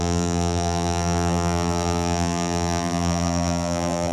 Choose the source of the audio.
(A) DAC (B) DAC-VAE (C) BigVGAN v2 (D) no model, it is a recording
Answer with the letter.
C